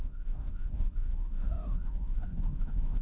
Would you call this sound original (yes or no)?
no